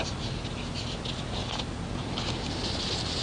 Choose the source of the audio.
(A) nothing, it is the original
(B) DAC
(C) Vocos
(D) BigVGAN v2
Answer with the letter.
A